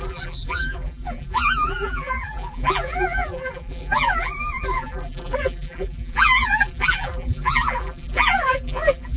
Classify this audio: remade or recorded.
remade